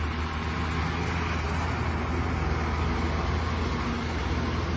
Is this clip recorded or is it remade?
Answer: recorded